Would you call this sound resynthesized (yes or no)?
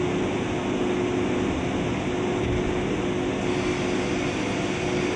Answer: no